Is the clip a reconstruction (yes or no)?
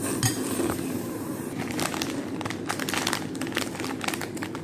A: no